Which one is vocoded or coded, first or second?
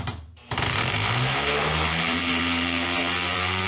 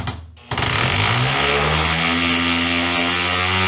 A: first